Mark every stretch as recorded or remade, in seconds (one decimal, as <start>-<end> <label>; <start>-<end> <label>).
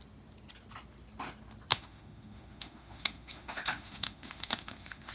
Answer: 0.0-1.7 recorded; 1.7-5.1 remade